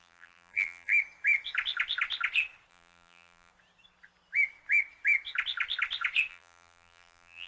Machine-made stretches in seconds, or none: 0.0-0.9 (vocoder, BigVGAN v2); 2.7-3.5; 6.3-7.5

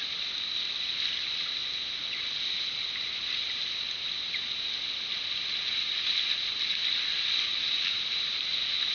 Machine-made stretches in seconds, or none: 7.5-8.4 (vocoder, BigVGAN v2)

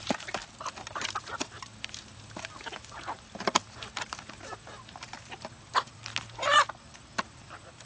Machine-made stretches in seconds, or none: 0.0-0.4 (vocoder, BigVGAN v2); 0.9-6.1; 7.2-7.9

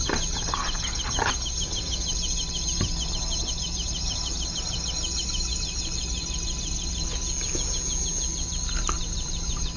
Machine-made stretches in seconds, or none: none

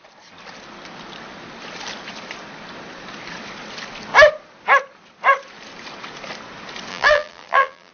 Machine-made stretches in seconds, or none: 6.9-7.9 (vocoder, BigVGAN v2)

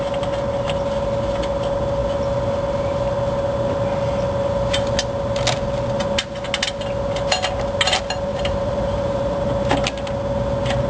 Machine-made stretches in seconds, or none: 8.3-9.5 (vocoder, BigVGAN v2)